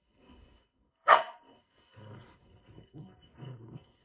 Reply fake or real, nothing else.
fake